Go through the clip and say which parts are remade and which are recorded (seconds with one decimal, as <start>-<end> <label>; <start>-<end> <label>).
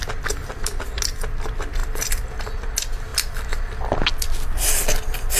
0.0-5.4 recorded